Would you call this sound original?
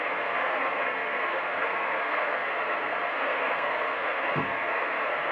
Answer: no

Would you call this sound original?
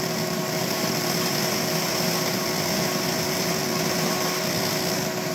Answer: yes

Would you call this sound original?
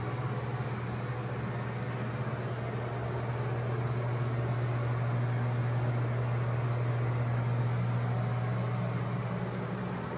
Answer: yes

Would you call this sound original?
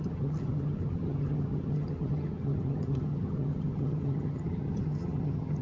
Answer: no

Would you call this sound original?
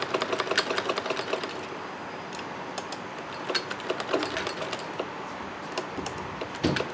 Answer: yes